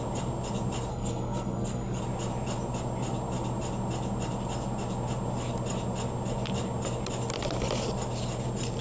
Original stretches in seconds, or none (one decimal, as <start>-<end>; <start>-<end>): 0.0-0.9; 2.0-8.8